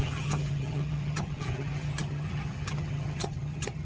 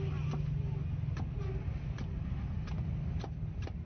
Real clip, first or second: second